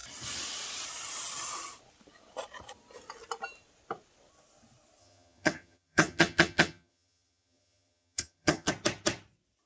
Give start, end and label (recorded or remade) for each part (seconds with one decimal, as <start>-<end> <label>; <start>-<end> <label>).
0.0-5.0 recorded; 5.0-8.7 remade; 8.7-9.7 recorded